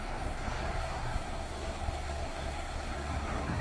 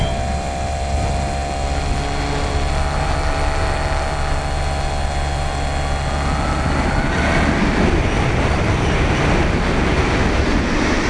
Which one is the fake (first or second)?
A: first